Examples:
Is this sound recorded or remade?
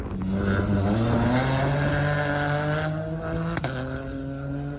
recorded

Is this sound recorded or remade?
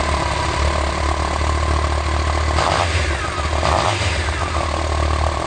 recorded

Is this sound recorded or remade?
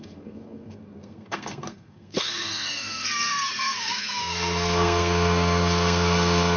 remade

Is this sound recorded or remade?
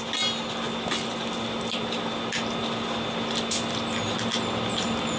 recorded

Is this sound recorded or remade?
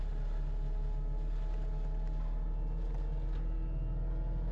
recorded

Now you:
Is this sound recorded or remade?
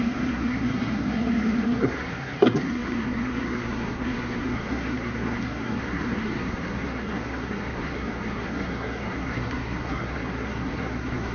remade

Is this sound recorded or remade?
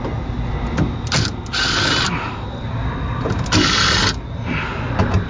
recorded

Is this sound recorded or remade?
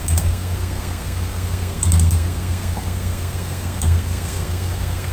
remade